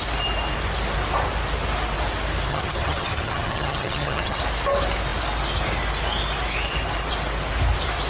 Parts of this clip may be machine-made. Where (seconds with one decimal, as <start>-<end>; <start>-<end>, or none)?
2.5-4.4

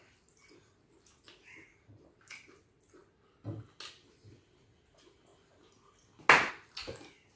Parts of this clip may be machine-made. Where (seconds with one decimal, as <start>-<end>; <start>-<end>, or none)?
none

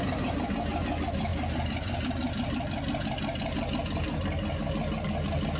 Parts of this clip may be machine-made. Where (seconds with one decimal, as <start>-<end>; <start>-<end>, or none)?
none

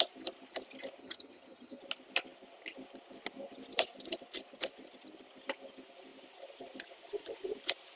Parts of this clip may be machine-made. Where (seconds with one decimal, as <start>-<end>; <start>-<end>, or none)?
1.0-1.8

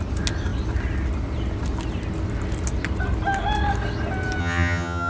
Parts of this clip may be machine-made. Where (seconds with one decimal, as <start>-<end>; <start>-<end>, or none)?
4.4-5.1